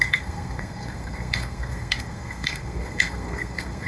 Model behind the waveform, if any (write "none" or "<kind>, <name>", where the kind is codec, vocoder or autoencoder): codec, SNAC